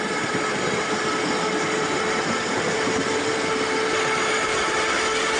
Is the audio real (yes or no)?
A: yes